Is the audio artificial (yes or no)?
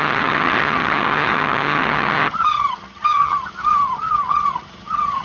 yes